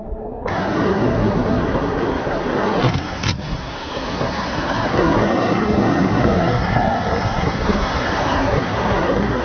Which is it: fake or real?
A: fake